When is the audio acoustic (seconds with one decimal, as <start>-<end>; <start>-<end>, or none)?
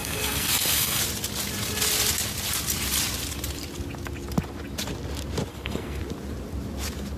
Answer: 1.0-5.5; 6.0-7.2